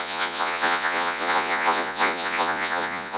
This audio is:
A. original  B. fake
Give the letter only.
B